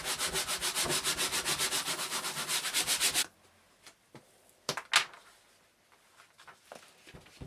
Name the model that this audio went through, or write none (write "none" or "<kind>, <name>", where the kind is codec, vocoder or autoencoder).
none